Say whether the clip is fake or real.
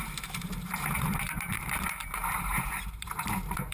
fake